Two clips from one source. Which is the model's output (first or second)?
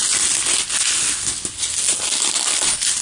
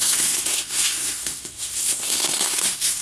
second